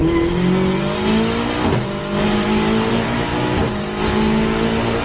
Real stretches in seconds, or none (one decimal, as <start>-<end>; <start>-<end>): 0.0-2.9; 3.3-5.0